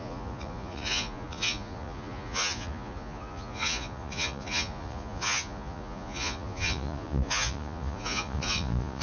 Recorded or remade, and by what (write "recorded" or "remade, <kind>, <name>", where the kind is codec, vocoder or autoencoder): remade, vocoder, Vocos